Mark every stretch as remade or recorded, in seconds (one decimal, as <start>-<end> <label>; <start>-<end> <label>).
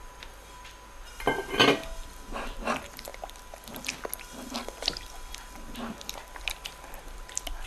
0.0-7.7 recorded